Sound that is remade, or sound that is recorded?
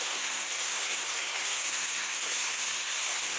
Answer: remade